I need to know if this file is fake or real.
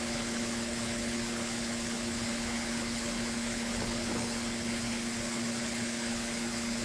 fake